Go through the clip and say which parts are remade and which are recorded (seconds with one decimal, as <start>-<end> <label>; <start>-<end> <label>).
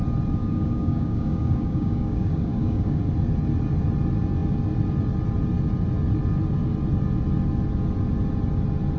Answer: 0.0-0.4 recorded; 0.4-3.0 remade; 3.0-9.0 recorded